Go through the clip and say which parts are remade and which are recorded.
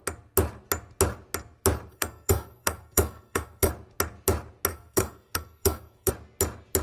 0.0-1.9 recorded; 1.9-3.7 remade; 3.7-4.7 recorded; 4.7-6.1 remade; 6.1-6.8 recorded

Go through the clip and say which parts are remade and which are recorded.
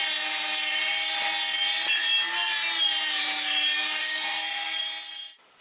0.0-4.0 recorded; 4.0-4.8 remade; 4.8-5.6 recorded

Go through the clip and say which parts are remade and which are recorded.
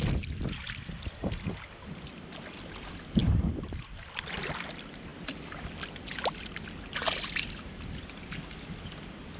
0.0-3.2 recorded; 3.2-4.2 remade; 4.2-9.4 recorded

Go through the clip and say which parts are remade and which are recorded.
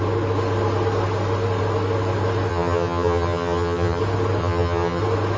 0.0-2.5 recorded; 2.5-4.0 remade; 4.0-4.4 recorded; 4.4-5.0 remade; 5.0-5.4 recorded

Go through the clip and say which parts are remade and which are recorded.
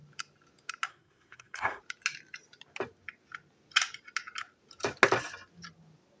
0.0-0.9 recorded; 0.9-1.8 remade; 1.8-6.2 recorded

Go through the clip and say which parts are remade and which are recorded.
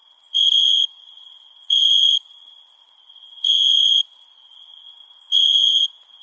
0.0-6.2 remade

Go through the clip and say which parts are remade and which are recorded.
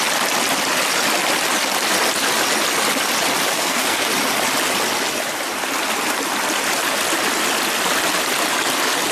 0.0-3.5 recorded; 3.5-4.1 remade; 4.1-9.1 recorded